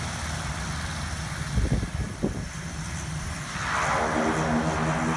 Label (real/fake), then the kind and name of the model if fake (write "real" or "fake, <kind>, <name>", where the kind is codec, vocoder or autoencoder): real